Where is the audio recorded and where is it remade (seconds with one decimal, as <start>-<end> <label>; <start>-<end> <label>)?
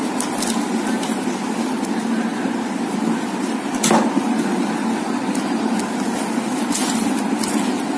0.0-8.0 recorded